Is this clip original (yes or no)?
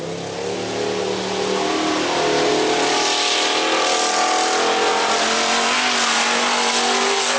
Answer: yes